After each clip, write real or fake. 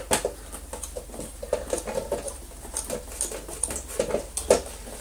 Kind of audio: real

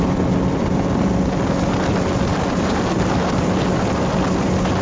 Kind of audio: real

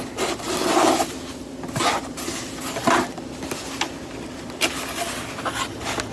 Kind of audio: real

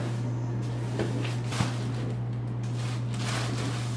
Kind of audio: real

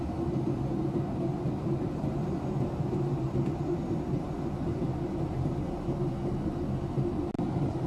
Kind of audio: real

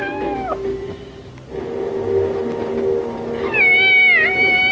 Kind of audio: real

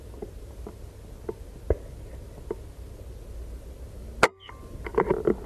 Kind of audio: real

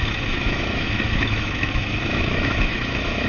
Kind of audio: fake